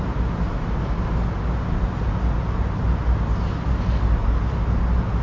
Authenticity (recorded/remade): recorded